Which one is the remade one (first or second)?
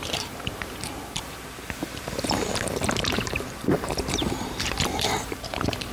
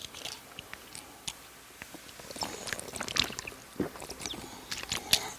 first